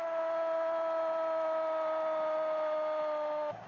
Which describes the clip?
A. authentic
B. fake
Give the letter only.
A